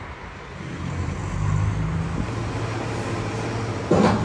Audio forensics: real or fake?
real